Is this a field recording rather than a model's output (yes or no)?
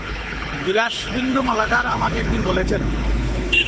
no